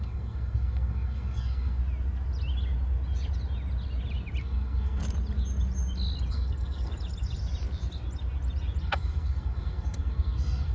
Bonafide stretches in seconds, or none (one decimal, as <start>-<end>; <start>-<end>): 1.8-4.4; 5.0-6.3; 6.9-8.8